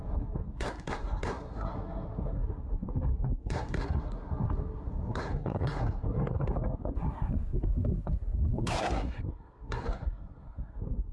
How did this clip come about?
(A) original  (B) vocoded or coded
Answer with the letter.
B